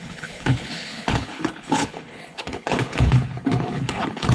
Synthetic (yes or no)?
yes